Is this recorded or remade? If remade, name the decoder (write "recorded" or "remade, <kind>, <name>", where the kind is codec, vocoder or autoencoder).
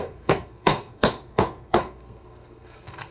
remade, codec, SNAC